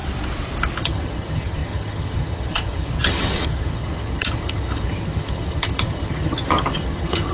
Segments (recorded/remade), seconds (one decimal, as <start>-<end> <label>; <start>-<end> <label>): 0.0-0.8 recorded; 0.8-7.3 remade